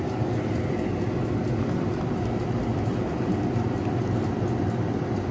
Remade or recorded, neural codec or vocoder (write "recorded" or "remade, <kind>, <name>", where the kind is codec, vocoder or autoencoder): remade, vocoder, BigVGAN v2